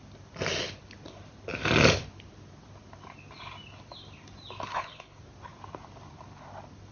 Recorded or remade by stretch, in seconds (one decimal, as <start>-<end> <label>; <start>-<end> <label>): 0.0-4.7 recorded; 4.7-5.2 remade; 5.2-6.9 recorded